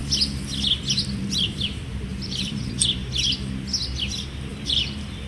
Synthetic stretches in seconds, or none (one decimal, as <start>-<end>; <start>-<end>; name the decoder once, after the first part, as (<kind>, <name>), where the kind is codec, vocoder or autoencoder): 2.1-2.7 (vocoder, BigVGAN v2); 4.5-5.3